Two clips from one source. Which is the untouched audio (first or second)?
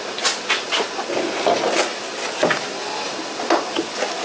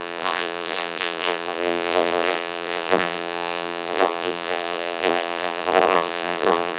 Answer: first